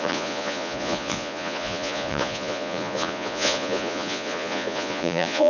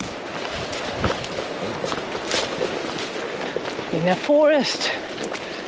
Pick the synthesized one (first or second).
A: first